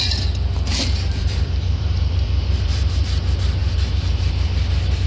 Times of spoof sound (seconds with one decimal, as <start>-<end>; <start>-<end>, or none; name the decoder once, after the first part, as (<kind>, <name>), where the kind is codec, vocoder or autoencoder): 0.7-3.0 (vocoder, BigVGAN v2); 3.6-4.3